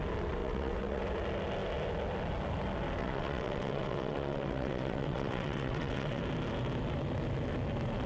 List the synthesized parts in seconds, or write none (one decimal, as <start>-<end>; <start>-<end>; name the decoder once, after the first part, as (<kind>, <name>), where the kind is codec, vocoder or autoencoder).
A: 0.4-1.0 (vocoder, WaveNeXt); 3.0-6.2